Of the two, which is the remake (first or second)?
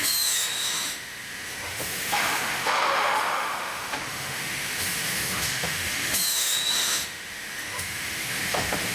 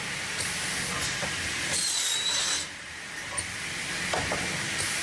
first